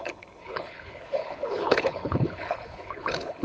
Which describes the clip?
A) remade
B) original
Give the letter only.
A